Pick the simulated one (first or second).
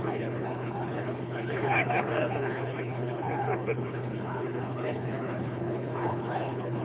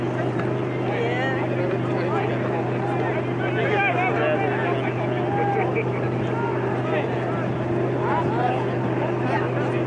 first